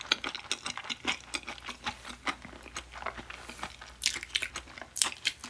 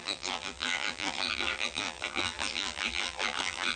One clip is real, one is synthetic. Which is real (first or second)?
first